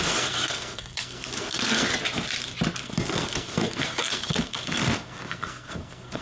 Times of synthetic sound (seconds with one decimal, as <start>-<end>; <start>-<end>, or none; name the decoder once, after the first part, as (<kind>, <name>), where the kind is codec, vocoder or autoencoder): 0.0-1.9 (codec, SNAC); 2.8-6.2